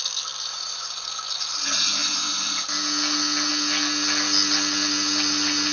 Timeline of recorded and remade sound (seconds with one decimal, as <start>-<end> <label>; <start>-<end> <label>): 0.0-0.5 recorded; 0.5-1.1 remade; 1.1-5.7 recorded